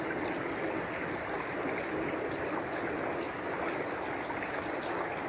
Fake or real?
real